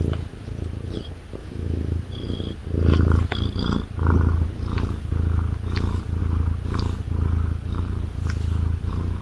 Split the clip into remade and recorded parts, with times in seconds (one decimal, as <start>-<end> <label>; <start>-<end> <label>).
0.0-1.4 recorded; 1.4-2.0 remade; 2.0-9.2 recorded